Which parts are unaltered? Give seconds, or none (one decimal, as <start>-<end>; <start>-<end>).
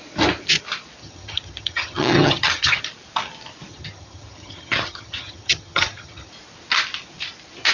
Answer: 0.0-1.0; 2.8-3.7; 6.3-7.7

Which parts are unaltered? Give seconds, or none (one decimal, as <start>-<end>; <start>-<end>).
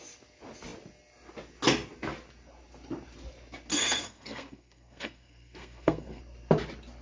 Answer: 0.0-3.7; 6.2-7.0